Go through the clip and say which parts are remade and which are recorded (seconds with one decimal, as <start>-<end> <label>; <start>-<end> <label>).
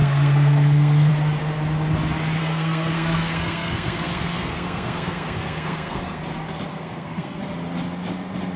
0.0-1.1 remade; 1.1-2.4 recorded; 2.4-6.2 remade; 6.2-6.7 recorded; 6.7-7.4 remade; 7.4-8.6 recorded